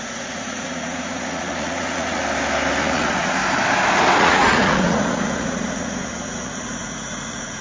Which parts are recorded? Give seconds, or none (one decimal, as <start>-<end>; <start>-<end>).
2.2-2.8; 3.4-4.2